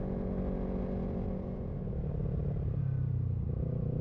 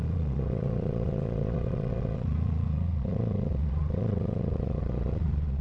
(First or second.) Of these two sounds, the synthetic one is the second